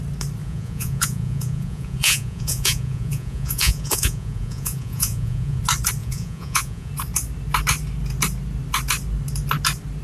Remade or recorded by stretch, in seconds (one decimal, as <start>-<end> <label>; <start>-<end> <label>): 0.0-0.4 recorded; 0.4-5.6 remade; 5.6-6.0 recorded; 6.0-6.9 remade; 6.9-10.0 recorded